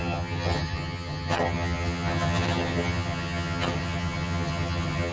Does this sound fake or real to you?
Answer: fake